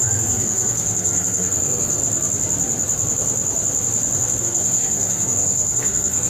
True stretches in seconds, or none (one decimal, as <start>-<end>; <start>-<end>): 2.0-4.4